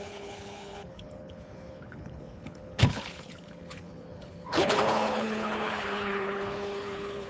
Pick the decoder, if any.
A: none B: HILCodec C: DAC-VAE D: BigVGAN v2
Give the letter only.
B